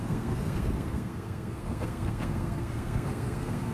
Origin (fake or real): fake